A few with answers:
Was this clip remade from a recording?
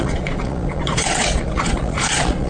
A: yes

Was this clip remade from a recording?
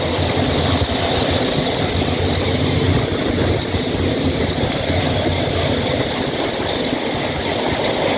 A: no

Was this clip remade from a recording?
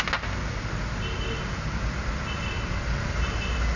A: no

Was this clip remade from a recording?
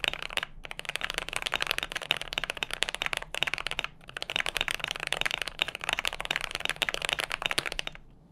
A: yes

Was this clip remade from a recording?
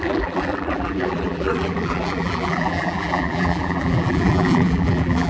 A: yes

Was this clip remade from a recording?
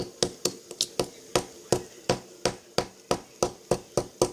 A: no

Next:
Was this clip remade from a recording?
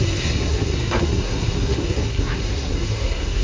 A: yes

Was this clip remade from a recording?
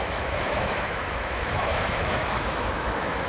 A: yes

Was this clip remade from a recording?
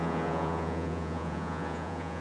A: yes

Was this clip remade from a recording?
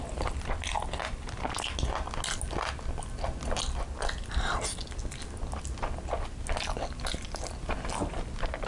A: no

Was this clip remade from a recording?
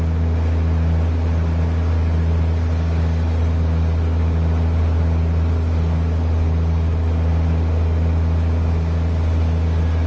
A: no